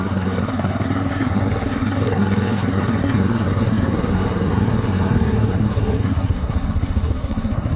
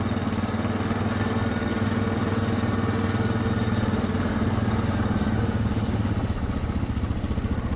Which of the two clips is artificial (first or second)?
first